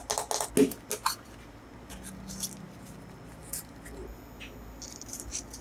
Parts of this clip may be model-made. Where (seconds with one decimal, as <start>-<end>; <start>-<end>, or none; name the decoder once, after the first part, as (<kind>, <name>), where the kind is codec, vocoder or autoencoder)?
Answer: none